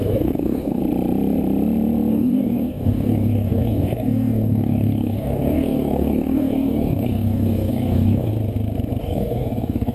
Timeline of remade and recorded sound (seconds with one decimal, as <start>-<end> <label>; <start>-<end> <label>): 0.0-0.8 remade; 0.8-2.1 recorded; 2.1-8.3 remade; 8.3-9.0 recorded; 9.0-9.9 remade